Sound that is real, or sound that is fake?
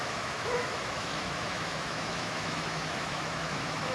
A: fake